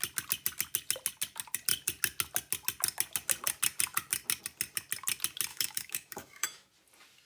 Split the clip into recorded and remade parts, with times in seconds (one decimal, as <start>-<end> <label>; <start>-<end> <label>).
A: 0.0-5.5 recorded; 5.5-6.7 remade; 6.7-7.3 recorded